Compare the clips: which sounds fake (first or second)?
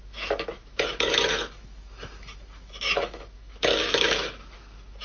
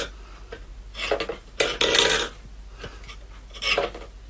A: first